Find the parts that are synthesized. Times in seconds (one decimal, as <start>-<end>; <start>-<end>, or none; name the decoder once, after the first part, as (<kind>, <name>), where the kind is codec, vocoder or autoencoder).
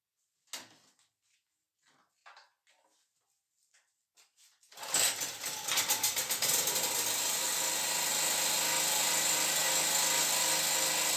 none